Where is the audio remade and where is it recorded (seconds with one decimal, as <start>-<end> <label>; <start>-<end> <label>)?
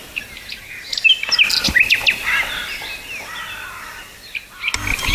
0.0-5.1 recorded